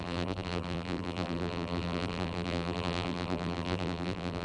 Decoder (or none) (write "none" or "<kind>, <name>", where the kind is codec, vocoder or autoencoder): vocoder, BigVGAN v2